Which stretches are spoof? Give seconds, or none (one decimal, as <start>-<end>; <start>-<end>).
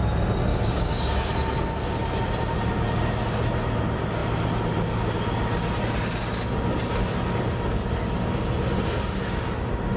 0.5-1.3